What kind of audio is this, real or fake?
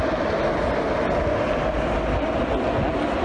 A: real